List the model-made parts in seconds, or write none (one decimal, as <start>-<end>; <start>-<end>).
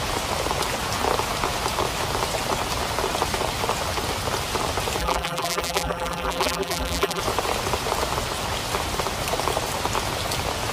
5.0-7.2